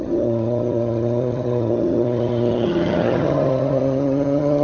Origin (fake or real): fake